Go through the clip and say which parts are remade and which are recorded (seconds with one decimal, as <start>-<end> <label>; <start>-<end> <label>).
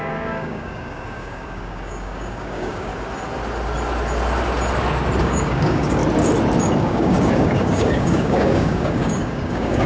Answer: 0.0-2.9 remade; 2.9-5.2 recorded; 5.2-6.0 remade; 6.0-6.8 recorded; 6.8-9.9 remade